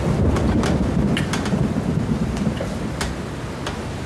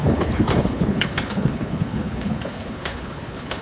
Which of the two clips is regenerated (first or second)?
second